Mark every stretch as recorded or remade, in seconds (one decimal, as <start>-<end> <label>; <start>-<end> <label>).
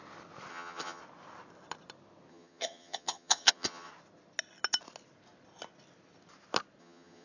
0.0-0.5 recorded; 0.5-1.0 remade; 1.0-2.3 recorded; 2.3-3.9 remade; 3.9-6.8 recorded; 6.8-7.2 remade